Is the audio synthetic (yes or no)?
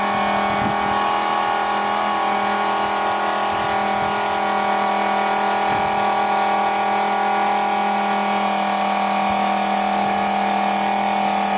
no